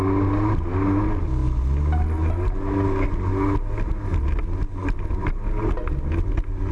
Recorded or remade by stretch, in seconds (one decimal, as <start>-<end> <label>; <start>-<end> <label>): 0.0-6.7 recorded